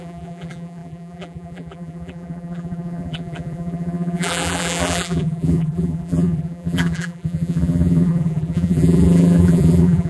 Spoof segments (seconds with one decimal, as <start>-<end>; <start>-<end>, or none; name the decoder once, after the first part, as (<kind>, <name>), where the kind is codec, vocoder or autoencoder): 0.0-10.1 (vocoder, BigVGAN v2)

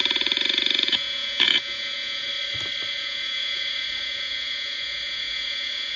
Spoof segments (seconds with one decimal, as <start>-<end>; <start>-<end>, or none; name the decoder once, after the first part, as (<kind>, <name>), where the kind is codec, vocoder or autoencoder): 0.0-2.3 (vocoder, Vocos); 2.9-6.0

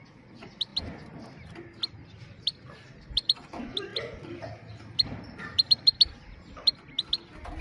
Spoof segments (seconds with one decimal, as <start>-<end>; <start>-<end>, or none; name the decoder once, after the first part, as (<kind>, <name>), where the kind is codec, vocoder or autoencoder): none

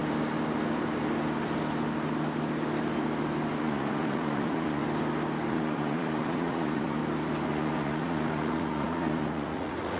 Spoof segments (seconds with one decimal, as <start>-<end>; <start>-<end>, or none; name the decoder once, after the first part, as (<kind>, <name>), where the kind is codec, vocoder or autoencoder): 3.6-4.8 (vocoder, Vocos); 5.5-7.0; 7.5-10.0

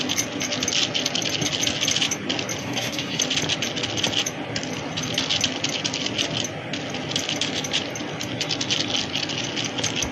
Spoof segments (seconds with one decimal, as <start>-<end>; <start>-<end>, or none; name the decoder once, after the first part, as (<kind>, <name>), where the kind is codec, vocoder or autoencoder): 2.6-3.2 (codec, SNAC)

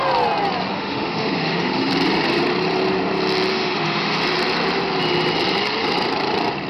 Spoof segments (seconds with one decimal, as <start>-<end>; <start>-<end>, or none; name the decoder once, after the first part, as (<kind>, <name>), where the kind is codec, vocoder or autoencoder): 0.7-1.9 (autoencoder, DAC-VAE); 3.5-4.2